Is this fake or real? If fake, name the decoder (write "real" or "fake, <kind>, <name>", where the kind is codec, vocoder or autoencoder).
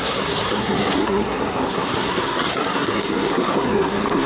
fake, codec, SNAC